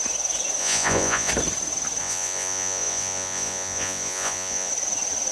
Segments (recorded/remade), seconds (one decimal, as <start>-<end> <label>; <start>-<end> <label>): 0.0-0.6 recorded; 0.6-1.3 remade; 1.3-2.0 recorded; 2.0-4.7 remade; 4.7-5.3 recorded

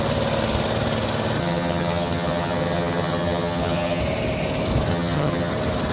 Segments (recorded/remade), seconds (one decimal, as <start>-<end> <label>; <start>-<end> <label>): 0.0-1.4 recorded; 1.4-4.0 remade; 4.0-4.9 recorded; 4.9-5.5 remade; 5.5-5.9 recorded

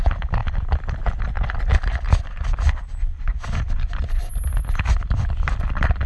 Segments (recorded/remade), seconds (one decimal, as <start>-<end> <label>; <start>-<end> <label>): 0.0-6.1 recorded

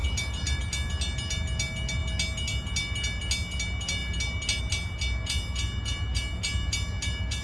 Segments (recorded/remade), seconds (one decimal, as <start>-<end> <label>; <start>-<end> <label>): 0.0-7.4 recorded

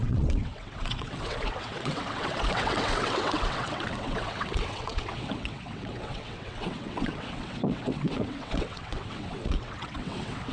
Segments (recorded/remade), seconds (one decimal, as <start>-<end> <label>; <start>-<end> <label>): 0.0-10.5 remade